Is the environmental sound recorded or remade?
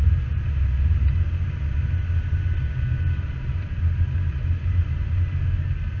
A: recorded